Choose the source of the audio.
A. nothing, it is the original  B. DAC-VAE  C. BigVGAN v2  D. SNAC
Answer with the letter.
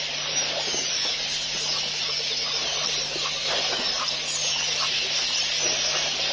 A